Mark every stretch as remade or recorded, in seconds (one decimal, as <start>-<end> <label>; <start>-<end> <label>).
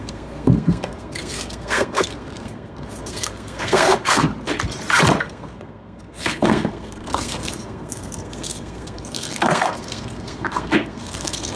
0.0-4.3 remade; 4.3-5.2 recorded; 5.2-11.6 remade